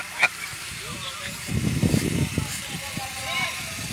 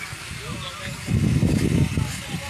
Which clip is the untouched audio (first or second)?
second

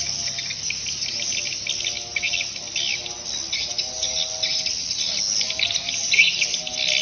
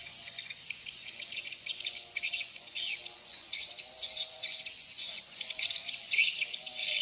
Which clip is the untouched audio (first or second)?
first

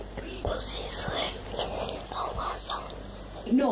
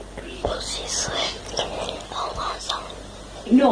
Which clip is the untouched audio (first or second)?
second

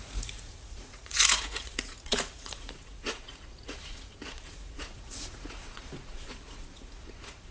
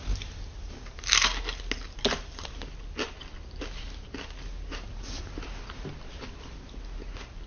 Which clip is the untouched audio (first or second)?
second